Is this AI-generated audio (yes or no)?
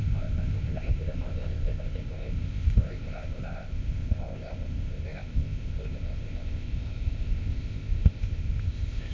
yes